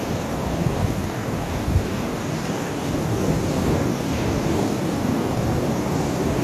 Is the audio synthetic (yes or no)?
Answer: yes